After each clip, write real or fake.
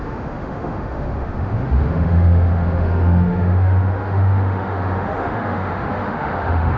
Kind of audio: fake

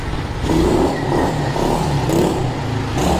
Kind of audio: real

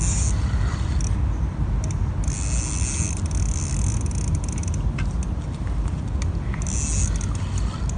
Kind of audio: real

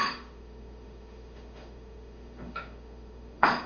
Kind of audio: fake